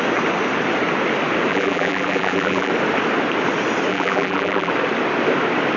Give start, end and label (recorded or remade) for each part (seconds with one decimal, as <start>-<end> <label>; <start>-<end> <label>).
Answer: 0.0-1.5 recorded; 1.5-2.7 remade; 2.7-3.9 recorded; 3.9-4.7 remade; 4.7-5.8 recorded